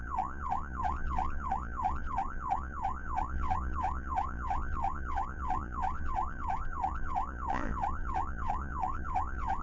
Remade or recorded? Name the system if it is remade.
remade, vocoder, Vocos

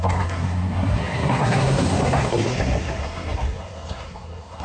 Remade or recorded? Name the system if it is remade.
remade, codec, SNAC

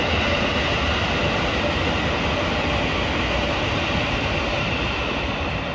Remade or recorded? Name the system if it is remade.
recorded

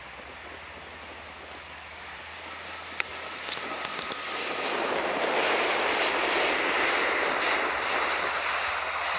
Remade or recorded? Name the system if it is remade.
recorded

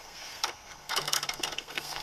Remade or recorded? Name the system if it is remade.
remade, codec, SNAC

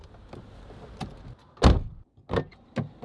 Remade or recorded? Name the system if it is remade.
recorded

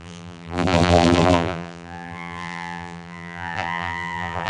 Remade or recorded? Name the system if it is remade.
remade, vocoder, BigVGAN v2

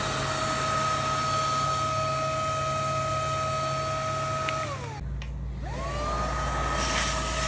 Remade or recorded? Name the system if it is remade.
recorded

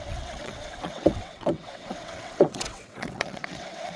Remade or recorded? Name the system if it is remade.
remade, vocoder, WaveNeXt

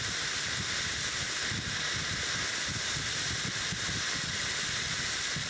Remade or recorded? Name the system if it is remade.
recorded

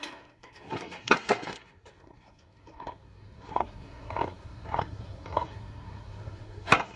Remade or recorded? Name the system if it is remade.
remade, codec, SNAC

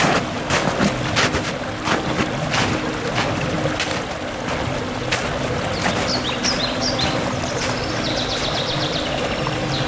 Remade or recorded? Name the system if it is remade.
recorded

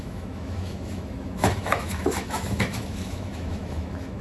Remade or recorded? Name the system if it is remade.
remade, autoencoder, DAC-VAE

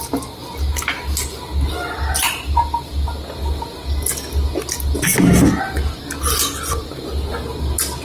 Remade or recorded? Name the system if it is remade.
recorded